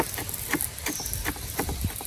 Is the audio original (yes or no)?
yes